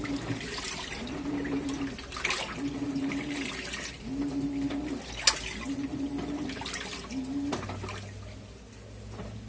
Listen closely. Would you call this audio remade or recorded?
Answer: recorded